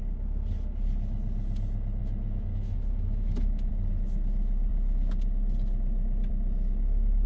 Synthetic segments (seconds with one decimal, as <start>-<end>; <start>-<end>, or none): 2.0-3.7